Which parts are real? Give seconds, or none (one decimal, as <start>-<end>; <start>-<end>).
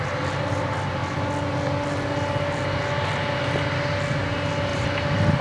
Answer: 0.0-4.7